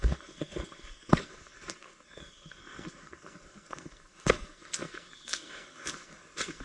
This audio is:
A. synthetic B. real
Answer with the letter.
A